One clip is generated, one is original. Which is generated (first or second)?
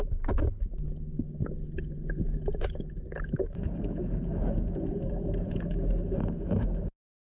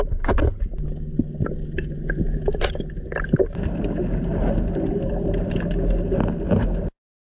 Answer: first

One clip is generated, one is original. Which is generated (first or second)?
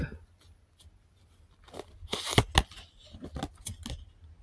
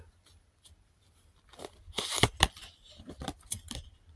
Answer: second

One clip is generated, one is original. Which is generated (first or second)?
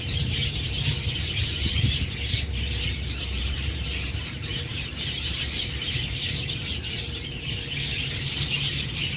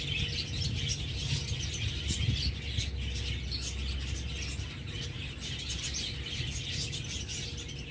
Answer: first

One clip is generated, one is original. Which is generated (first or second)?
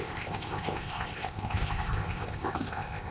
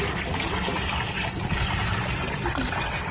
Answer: first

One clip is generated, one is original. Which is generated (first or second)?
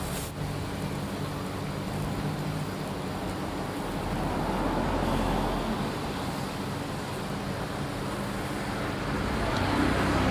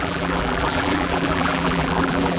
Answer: second